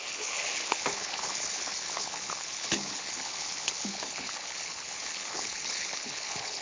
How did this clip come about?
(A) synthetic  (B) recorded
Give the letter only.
A